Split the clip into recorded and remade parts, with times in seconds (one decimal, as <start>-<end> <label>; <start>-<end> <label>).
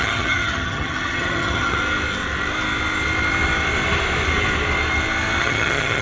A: 0.0-1.8 remade; 1.8-5.4 recorded; 5.4-6.0 remade